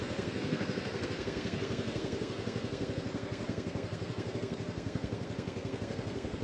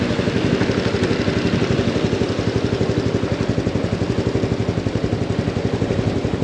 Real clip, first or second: second